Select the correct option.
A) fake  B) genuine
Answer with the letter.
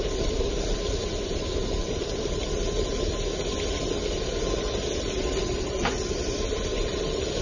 B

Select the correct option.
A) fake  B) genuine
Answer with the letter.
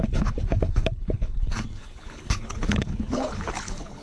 A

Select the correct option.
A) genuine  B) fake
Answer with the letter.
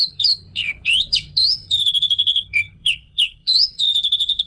B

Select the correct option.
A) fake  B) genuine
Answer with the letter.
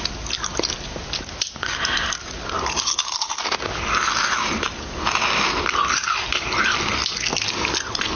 B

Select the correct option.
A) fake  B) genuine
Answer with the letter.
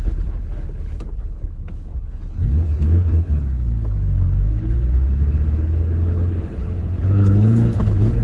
A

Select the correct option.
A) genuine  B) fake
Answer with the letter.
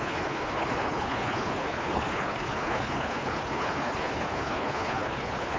B